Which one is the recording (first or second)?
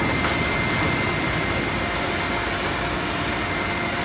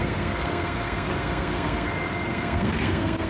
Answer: first